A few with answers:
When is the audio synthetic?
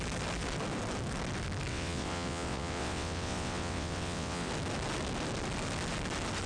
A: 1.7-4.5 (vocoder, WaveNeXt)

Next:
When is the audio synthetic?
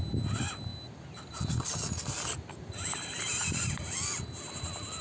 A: none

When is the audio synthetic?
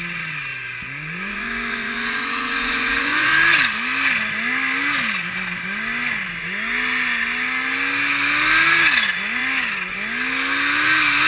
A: 0.5-3.3 (vocoder, Vocos)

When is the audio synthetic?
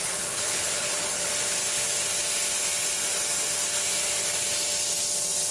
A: 0.0-1.3 (codec, HILCodec)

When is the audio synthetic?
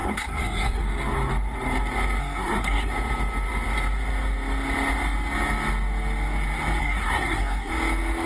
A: 0.0-0.8 (codec, SNAC); 2.2-2.9; 6.8-7.7